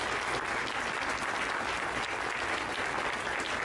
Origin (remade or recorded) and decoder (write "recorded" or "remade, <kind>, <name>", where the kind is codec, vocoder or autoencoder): recorded